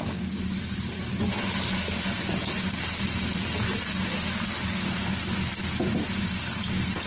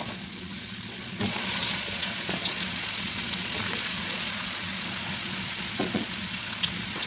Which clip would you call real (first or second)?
first